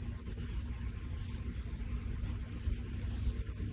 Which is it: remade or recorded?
recorded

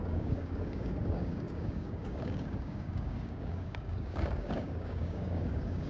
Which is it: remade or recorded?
remade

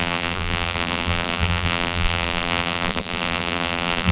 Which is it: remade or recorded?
remade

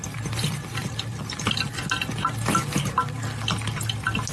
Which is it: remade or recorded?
recorded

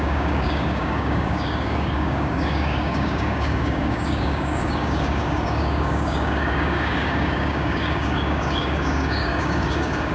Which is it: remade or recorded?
remade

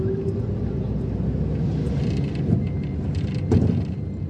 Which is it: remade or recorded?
recorded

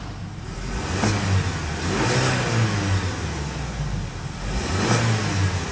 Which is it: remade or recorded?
recorded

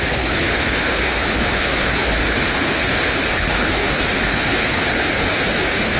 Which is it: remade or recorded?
remade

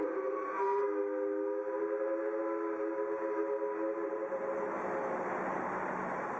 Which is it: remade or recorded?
recorded